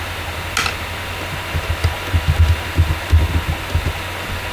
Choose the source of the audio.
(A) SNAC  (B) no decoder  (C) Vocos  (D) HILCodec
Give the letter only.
B